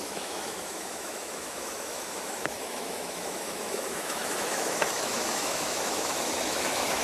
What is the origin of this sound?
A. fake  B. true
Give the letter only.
A